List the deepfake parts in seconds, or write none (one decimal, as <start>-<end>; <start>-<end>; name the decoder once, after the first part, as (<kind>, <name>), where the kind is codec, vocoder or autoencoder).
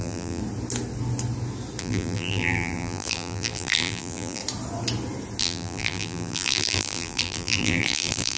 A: 0.0-0.4 (vocoder, BigVGAN v2); 1.8-4.4; 5.4-8.4